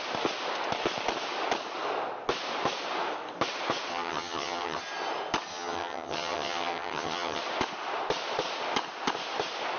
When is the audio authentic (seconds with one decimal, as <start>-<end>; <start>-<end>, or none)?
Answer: 0.0-3.9; 4.8-5.5; 7.4-9.8